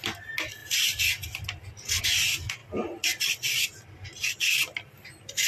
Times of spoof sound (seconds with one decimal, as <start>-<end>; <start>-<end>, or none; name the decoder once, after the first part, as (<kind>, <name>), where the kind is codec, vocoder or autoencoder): 0.6-2.0 (vocoder, BigVGAN v2)